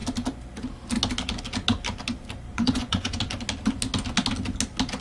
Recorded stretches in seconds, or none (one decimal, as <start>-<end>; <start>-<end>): 0.0-2.5; 3.2-5.0